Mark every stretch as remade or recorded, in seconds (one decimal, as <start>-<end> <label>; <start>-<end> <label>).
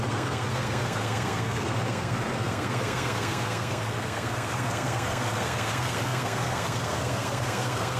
0.0-8.0 remade